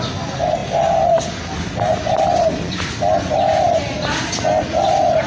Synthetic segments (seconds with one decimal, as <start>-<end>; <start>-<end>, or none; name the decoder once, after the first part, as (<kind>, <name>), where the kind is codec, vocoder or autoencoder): none